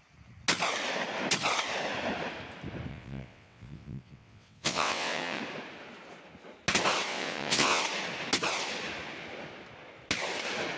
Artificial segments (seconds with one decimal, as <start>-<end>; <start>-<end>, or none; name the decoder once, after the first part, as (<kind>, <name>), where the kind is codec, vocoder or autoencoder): 2.9-5.4 (vocoder, WaveNeXt); 7.1-7.8